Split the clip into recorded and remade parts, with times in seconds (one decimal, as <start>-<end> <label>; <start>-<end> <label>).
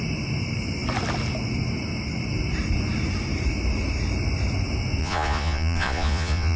0.0-5.0 recorded; 5.0-6.6 remade